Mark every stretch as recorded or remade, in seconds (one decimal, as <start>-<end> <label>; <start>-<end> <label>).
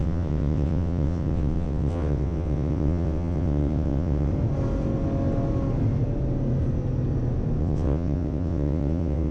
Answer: 0.0-4.3 remade; 4.3-7.6 recorded; 7.6-9.3 remade